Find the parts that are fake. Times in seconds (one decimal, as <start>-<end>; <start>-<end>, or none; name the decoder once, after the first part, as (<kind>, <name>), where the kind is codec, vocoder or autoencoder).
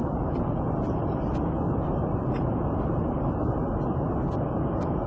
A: 0.0-5.1 (vocoder, BigVGAN v2)